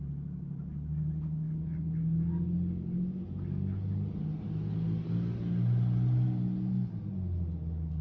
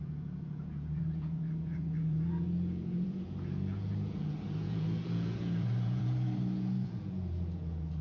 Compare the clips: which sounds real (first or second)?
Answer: first